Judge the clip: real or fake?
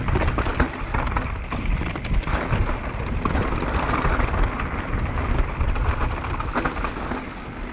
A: real